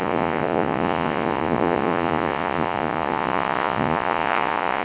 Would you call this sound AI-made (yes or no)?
yes